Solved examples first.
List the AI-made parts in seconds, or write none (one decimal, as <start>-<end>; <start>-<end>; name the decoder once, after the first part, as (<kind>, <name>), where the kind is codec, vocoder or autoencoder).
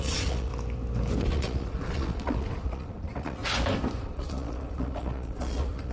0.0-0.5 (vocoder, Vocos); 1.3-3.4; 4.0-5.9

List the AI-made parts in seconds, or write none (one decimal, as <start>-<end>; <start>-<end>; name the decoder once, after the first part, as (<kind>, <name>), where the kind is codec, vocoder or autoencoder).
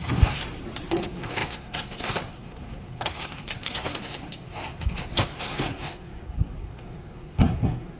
0.0-0.4 (codec, SNAC); 0.9-8.0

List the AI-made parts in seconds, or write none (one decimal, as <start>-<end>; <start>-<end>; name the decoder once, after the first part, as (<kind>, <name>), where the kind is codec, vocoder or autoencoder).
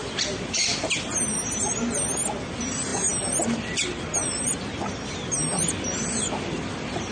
none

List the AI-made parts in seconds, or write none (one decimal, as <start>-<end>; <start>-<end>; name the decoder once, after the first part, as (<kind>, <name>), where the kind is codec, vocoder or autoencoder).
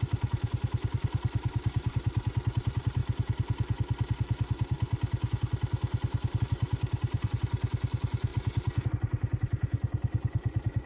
0.0-3.0 (vocoder, BigVGAN v2); 6.4-10.9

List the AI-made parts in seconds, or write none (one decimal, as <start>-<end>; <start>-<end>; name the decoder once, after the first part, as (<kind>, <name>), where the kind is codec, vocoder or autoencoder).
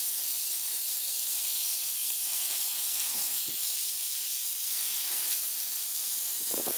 0.0-6.8 (codec, SNAC)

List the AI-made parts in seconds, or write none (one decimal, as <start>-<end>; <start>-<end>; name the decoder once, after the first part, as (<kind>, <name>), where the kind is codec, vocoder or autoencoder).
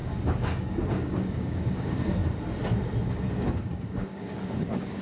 0.0-2.2 (codec, DAC); 3.3-5.0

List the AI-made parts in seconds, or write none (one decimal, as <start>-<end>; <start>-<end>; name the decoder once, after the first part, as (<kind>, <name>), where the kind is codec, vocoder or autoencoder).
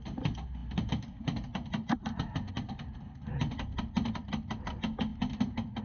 none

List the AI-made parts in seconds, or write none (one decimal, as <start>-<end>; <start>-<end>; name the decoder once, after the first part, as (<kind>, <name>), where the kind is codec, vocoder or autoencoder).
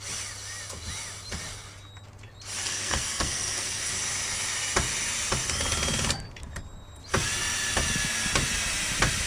2.6-3.9 (codec, SNAC)